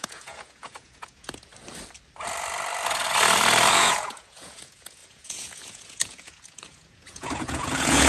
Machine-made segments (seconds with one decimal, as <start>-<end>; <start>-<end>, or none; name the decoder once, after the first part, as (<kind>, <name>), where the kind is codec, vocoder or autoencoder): 0.0-1.5 (vocoder, Vocos); 3.8-8.1